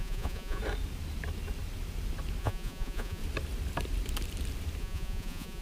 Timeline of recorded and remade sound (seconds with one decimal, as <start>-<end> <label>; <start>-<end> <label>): 0.0-0.6 remade; 0.6-2.4 recorded; 2.4-3.2 remade; 3.2-4.8 recorded; 4.8-5.6 remade